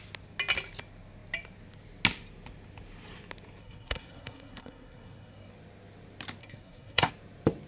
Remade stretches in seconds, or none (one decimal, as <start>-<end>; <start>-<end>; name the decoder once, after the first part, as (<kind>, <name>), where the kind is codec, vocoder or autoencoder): 3.6-5.5 (codec, SNAC); 6.4-7.1